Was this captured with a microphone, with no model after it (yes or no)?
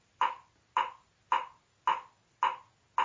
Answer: yes